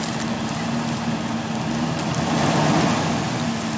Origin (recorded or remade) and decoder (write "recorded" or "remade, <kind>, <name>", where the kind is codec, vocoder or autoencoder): recorded